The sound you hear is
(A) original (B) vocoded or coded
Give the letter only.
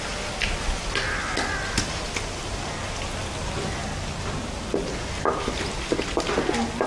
A